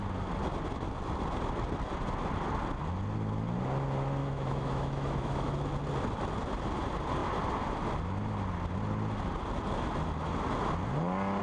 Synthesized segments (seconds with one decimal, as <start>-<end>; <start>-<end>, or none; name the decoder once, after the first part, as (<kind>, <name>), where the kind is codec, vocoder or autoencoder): 4.2-5.5 (autoencoder, DAC-VAE)